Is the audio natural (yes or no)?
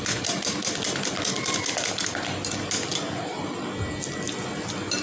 yes